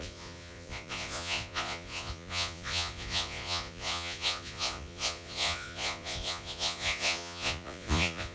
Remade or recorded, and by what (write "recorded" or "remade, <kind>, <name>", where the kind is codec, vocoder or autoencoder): remade, vocoder, Vocos